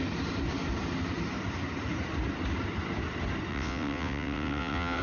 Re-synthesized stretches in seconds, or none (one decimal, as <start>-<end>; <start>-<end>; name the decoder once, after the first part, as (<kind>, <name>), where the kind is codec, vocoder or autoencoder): 3.5-5.0 (vocoder, WaveNeXt)